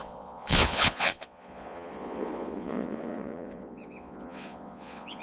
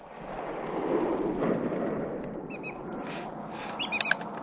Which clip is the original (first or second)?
second